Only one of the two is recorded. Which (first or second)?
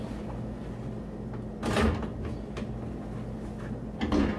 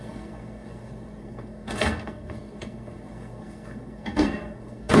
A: first